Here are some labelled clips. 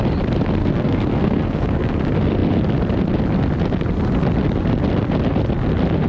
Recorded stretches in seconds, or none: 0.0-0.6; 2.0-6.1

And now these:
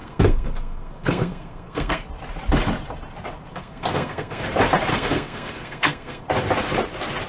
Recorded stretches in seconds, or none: 2.0-3.5; 4.4-4.9; 6.2-7.3

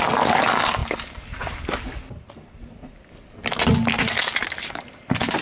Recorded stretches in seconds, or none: 0.0-5.4

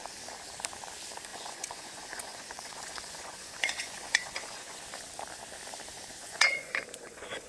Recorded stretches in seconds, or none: 0.0-1.3; 4.8-6.2

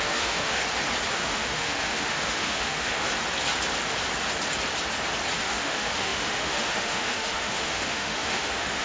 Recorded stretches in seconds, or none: 0.6-1.1; 3.1-5.4

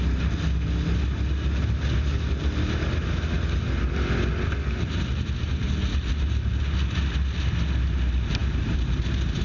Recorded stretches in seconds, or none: 0.0-8.4; 9.0-9.4

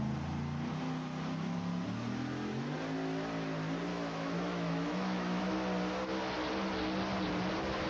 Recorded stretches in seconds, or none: 0.0-3.9; 5.4-7.9

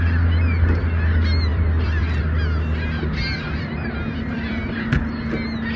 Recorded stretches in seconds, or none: 0.0-1.5; 2.2-3.3; 5.0-5.8